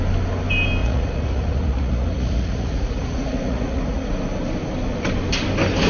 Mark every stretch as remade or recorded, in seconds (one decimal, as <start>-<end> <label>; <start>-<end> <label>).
0.0-0.8 recorded; 0.8-4.1 remade; 4.1-5.9 recorded